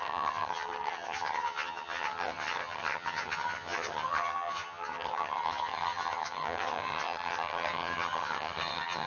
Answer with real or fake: fake